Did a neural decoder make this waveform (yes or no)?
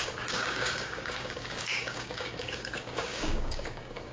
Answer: yes